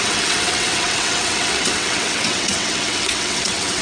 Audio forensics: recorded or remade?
remade